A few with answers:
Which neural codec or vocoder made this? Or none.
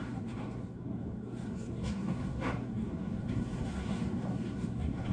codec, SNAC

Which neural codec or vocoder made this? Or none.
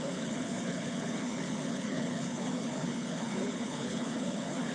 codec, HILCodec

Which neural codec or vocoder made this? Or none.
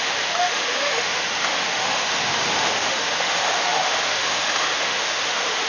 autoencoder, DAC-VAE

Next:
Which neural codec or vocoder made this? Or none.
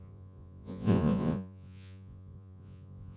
vocoder, Vocos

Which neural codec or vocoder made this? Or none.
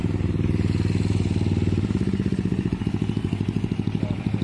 none